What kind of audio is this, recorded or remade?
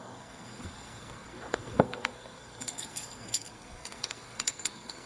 remade